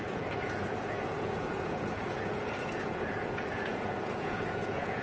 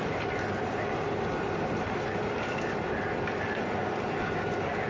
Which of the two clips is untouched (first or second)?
second